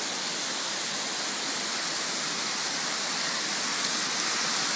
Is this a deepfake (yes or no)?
no